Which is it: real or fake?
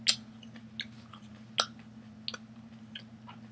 real